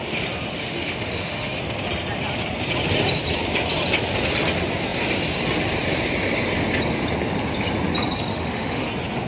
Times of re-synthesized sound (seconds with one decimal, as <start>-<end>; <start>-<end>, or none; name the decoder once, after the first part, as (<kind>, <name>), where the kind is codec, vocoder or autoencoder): 0.6-1.6 (autoencoder, DAC-VAE); 8.3-8.9